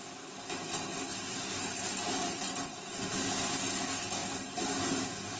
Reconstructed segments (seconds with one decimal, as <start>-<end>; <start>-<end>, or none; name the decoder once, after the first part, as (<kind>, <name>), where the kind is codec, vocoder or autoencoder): none